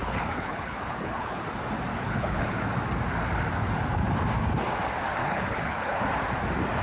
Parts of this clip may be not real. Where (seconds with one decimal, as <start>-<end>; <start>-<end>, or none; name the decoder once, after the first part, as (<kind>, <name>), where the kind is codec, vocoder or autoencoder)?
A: 0.0-1.4 (codec, HILCodec); 1.9-2.7; 5.2-6.0